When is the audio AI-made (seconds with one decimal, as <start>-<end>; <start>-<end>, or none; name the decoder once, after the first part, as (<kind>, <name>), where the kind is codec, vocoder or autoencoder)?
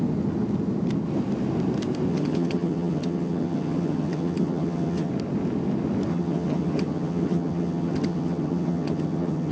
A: 2.1-5.1 (vocoder, HiFi-GAN); 6.1-9.5